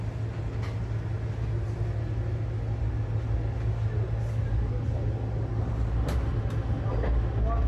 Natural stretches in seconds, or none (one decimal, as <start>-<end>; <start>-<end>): 0.0-7.7